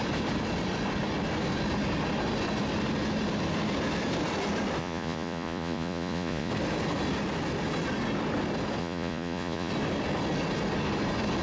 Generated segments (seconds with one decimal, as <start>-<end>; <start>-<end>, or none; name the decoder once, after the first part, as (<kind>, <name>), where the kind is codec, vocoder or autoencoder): 4.8-6.5 (vocoder, Vocos); 8.8-9.7